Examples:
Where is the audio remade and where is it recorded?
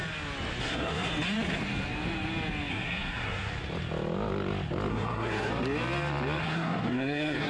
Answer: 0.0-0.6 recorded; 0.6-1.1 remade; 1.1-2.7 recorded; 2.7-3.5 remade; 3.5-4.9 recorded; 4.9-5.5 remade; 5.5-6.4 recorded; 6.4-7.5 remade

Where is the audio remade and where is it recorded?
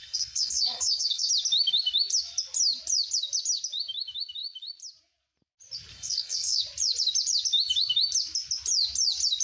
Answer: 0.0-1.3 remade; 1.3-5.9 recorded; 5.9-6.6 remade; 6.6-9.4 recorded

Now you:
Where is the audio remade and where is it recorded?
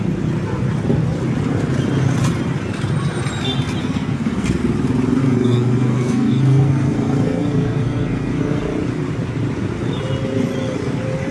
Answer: 0.0-3.8 recorded; 3.8-4.6 remade; 4.6-5.2 recorded; 5.2-8.6 remade; 8.6-11.3 recorded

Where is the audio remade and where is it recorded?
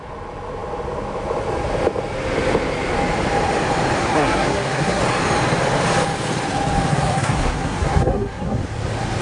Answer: 0.0-4.0 recorded; 4.0-5.0 remade; 5.0-6.9 recorded; 6.9-8.6 remade; 8.6-9.2 recorded